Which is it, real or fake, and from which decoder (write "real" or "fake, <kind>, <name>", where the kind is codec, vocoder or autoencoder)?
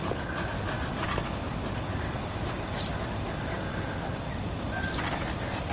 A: real